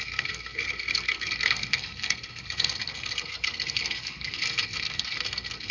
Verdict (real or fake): fake